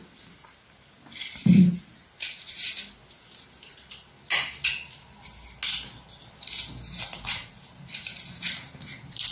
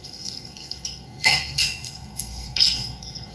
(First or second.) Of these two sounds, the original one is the first